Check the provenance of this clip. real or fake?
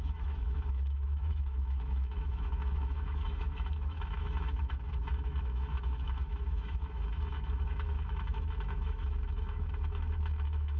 fake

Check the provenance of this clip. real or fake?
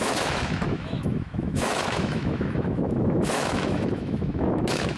fake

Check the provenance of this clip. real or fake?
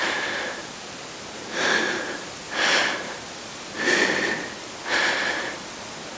fake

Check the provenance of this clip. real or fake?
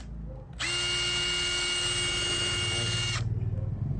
real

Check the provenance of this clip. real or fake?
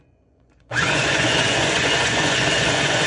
fake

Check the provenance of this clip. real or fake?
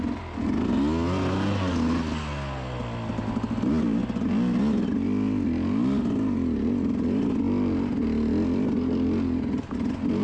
real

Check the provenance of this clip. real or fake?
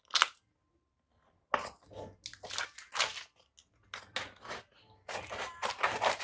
real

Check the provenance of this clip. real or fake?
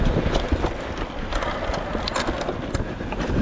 real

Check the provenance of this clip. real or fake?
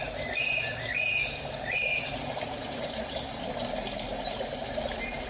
real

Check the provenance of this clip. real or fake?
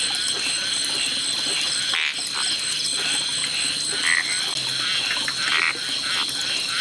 real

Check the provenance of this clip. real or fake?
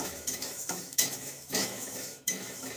fake